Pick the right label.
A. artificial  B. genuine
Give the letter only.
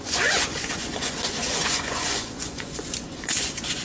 A